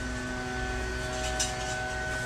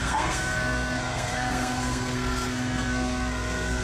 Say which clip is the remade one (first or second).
second